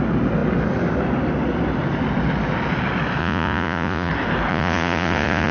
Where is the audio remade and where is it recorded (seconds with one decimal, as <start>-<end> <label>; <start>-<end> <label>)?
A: 0.0-3.2 recorded; 3.2-4.1 remade; 4.1-4.5 recorded; 4.5-5.5 remade